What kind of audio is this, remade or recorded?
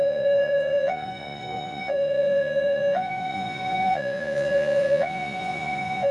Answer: remade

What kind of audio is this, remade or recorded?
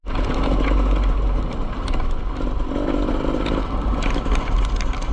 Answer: recorded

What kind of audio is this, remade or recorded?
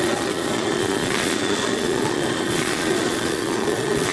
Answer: remade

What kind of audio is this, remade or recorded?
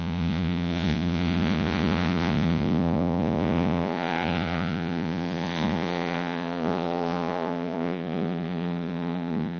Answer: remade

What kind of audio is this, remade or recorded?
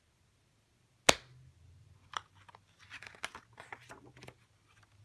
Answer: recorded